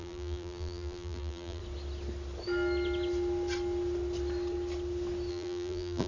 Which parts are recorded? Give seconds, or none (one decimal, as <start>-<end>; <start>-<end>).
1.6-5.3